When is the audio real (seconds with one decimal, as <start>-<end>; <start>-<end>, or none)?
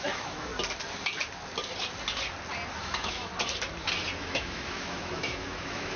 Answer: 0.5-2.8; 3.3-4.2